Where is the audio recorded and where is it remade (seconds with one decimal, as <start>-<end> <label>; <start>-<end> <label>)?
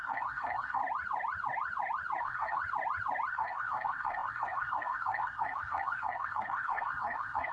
0.0-0.8 remade; 0.8-2.2 recorded; 2.2-2.6 remade; 2.6-3.3 recorded; 3.3-7.5 remade